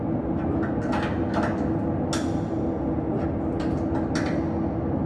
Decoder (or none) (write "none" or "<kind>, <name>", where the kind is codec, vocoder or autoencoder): none